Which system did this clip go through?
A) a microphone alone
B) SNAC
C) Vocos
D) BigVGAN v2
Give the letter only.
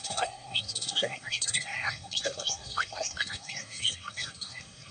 B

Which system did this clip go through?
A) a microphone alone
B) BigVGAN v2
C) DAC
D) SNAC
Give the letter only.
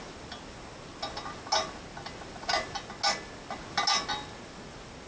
A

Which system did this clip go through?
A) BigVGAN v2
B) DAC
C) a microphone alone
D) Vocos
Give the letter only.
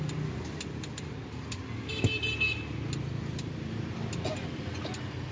C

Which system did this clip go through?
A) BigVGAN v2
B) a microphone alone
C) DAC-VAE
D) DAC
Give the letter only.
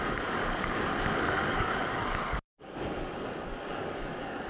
D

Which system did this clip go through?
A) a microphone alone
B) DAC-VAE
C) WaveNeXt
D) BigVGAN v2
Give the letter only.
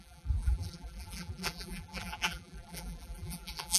D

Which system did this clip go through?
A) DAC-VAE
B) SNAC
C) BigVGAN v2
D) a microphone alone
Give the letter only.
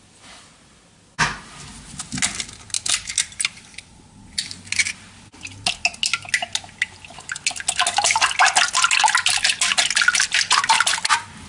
D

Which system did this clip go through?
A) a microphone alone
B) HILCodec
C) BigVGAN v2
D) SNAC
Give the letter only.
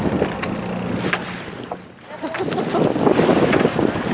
A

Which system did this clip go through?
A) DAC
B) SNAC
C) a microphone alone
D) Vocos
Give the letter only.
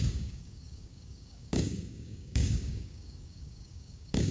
A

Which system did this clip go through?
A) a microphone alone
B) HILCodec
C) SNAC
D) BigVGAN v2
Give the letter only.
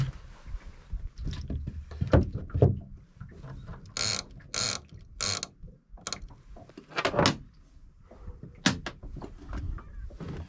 A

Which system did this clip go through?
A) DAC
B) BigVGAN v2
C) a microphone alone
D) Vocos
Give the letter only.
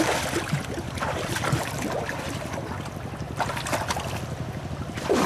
C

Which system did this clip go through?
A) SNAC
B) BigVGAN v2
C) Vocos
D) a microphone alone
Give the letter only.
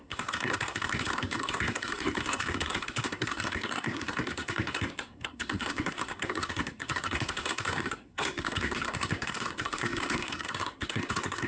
A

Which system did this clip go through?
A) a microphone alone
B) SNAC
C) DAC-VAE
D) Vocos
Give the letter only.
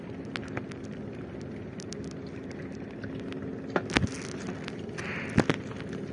A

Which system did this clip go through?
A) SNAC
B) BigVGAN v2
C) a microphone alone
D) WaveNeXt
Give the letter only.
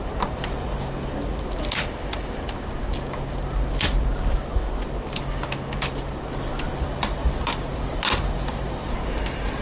C